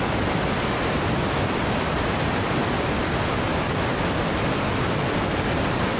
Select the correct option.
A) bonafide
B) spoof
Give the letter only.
A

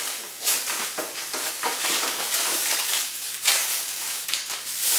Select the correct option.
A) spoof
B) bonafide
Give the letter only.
A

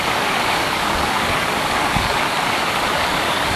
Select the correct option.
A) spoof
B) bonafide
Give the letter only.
A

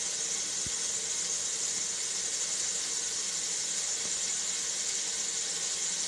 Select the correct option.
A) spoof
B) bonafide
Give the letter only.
B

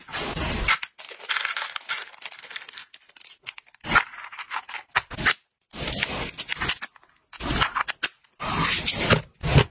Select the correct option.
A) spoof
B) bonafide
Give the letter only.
B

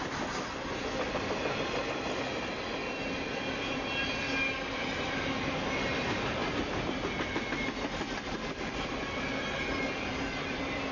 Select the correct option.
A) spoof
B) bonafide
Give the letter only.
B